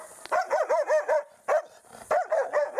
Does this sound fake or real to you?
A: real